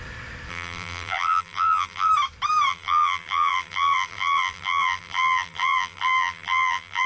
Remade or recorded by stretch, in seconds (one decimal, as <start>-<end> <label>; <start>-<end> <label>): 0.0-0.5 recorded; 0.5-2.1 remade; 2.1-2.7 recorded; 2.7-7.1 remade